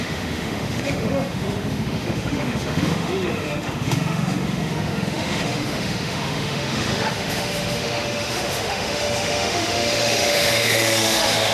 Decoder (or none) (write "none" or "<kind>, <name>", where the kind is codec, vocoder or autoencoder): autoencoder, DAC-VAE